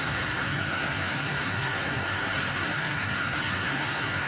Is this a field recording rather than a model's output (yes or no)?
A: no